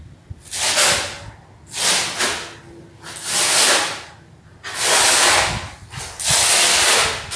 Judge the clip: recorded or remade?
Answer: recorded